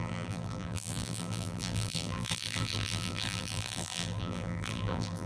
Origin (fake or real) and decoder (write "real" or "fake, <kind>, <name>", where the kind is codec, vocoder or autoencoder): fake, vocoder, BigVGAN v2